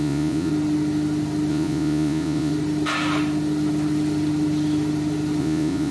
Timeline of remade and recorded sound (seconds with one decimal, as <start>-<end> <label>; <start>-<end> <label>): 0.0-0.5 remade; 0.5-1.5 recorded; 1.5-2.5 remade; 2.5-5.4 recorded; 5.4-5.9 remade